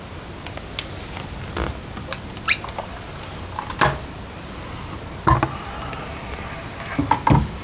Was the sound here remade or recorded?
recorded